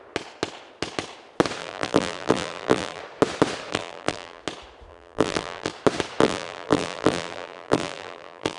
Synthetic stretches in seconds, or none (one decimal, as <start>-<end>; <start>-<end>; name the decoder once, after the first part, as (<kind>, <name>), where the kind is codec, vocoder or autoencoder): 1.6-3.0 (vocoder, BigVGAN v2); 3.7-4.4; 4.9-5.7; 6.2-8.6